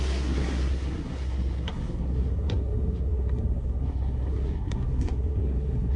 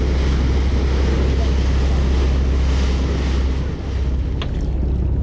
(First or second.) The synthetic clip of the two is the first